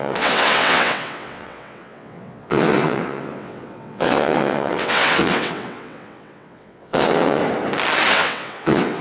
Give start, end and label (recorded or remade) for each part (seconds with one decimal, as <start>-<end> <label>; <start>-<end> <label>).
0.0-7.4 remade; 7.4-8.1 recorded; 8.1-9.0 remade